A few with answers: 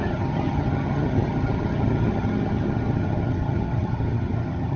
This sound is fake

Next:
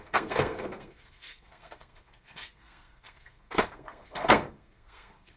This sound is fake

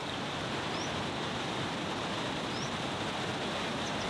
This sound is real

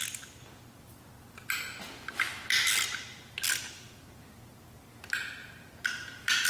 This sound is real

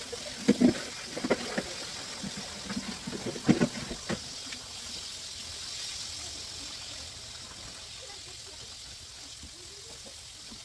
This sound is real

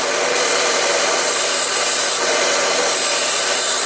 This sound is real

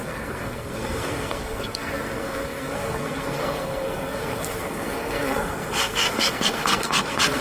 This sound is fake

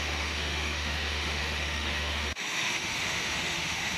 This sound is fake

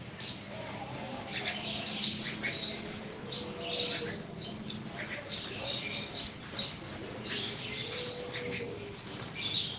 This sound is real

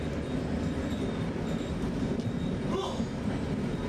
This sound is real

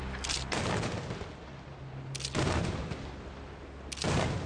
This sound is real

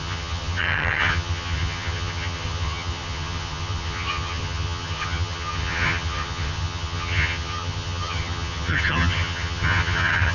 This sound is fake